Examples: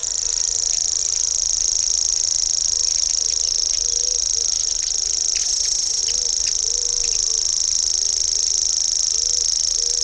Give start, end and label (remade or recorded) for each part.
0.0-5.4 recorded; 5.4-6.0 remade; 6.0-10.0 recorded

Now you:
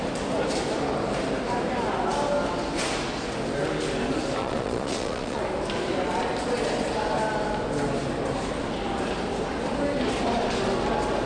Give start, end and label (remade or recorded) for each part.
0.0-4.4 recorded; 4.4-5.4 remade; 5.4-11.3 recorded

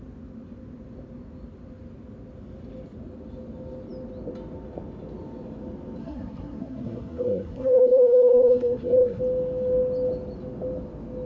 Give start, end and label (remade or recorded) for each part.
0.0-6.0 recorded; 6.0-9.2 remade; 9.2-11.3 recorded